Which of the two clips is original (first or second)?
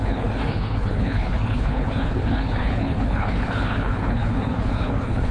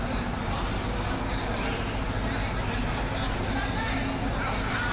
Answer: second